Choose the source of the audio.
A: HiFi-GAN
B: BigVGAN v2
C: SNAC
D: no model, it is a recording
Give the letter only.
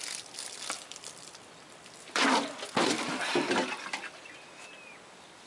B